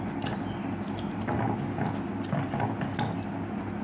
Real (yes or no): yes